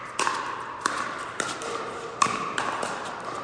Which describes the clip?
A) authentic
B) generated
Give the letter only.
A